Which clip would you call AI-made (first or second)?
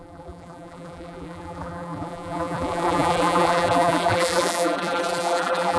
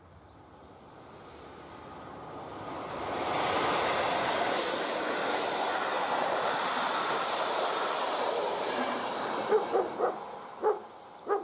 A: first